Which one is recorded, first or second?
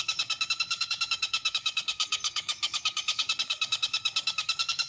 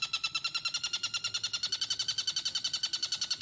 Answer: second